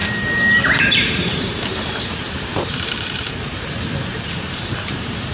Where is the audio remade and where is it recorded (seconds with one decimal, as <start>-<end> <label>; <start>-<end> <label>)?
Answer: 0.0-0.8 recorded; 0.8-5.3 remade